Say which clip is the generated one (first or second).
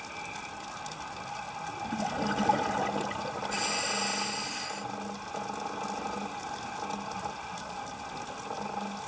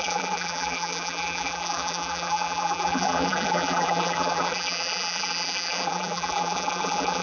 second